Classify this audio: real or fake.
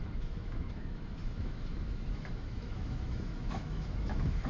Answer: fake